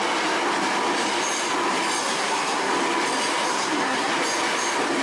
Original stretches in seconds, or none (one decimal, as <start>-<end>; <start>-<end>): 0.0-2.0; 2.7-3.5; 4.1-5.0